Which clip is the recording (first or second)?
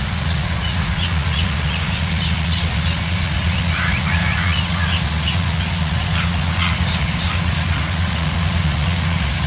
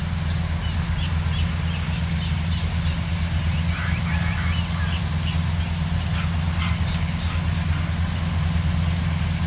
second